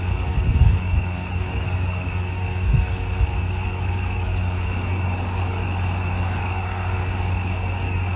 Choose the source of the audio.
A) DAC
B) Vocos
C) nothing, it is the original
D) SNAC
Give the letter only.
A